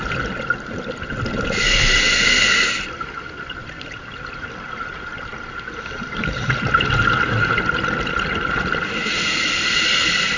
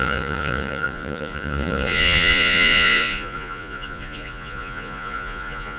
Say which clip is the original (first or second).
first